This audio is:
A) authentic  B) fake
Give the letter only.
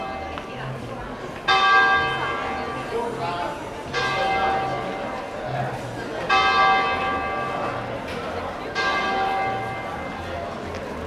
A